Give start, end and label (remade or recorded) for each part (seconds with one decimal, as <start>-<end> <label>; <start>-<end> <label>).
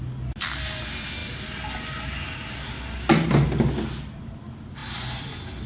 0.0-1.2 recorded; 1.2-4.2 remade; 4.2-5.7 recorded